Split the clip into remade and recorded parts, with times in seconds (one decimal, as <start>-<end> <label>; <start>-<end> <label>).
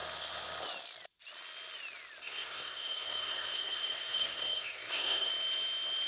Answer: 0.0-2.2 recorded; 2.2-5.3 remade; 5.3-6.1 recorded